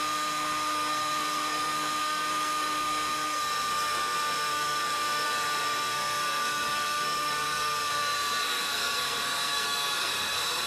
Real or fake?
fake